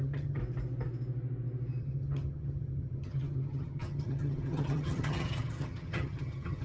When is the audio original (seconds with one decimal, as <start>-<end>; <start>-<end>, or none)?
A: 0.4-1.8